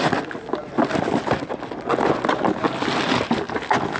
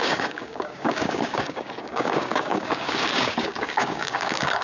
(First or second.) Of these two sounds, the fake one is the second